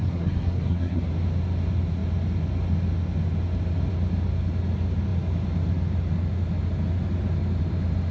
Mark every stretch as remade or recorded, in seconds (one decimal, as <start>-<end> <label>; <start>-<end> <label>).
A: 0.0-1.1 remade; 1.1-8.1 recorded